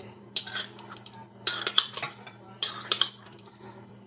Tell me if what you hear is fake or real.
fake